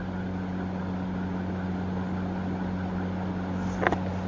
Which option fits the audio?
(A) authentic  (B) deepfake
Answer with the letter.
A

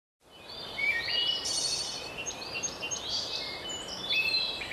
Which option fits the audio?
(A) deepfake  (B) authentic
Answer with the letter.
A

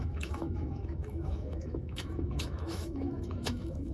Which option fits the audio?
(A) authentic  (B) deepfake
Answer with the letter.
B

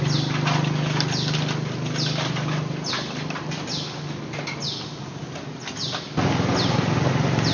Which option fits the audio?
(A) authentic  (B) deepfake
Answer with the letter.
A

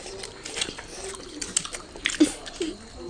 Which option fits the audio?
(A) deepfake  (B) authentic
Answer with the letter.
B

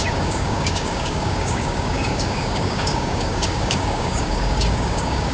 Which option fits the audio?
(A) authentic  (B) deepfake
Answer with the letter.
B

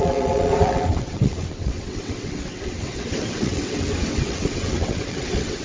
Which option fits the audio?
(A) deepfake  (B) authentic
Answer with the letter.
A